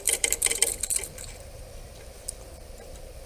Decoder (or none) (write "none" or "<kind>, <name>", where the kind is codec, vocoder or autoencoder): vocoder, BigVGAN v2